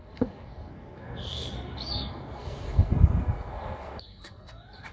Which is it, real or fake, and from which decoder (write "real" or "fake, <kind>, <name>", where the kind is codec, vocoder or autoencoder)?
fake, codec, SNAC